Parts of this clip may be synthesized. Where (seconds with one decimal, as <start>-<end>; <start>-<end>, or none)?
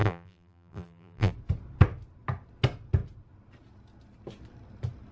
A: 0.0-1.3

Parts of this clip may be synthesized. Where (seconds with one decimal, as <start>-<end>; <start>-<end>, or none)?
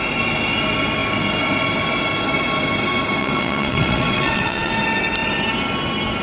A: 3.2-4.7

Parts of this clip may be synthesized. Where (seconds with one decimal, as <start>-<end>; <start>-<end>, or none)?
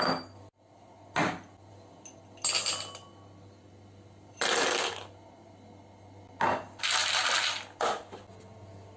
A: none